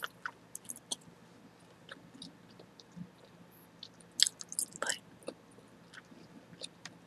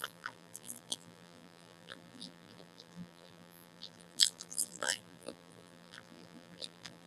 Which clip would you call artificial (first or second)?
second